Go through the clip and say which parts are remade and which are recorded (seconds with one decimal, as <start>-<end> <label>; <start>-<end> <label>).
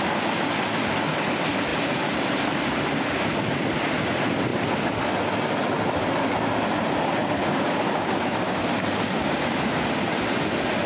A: 0.0-7.2 recorded; 7.2-8.6 remade; 8.6-10.9 recorded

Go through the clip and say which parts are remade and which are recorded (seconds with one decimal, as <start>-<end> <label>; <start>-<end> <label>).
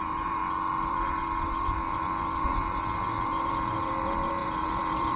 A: 0.0-0.4 remade; 0.4-0.9 recorded; 0.9-5.2 remade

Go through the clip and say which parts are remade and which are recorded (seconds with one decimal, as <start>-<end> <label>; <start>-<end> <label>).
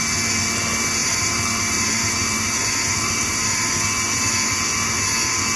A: 0.0-1.0 recorded; 1.0-3.7 remade; 3.7-5.6 recorded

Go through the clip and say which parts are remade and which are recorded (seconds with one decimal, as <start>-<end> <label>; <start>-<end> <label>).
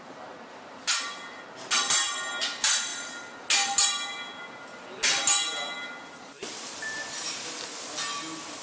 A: 0.0-8.6 recorded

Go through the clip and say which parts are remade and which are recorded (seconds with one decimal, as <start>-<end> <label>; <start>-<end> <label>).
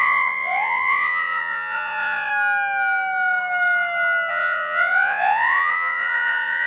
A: 0.0-2.3 remade; 2.3-4.3 recorded; 4.3-6.7 remade